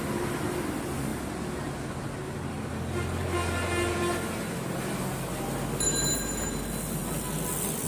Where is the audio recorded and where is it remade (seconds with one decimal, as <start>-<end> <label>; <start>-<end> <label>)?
0.0-7.9 recorded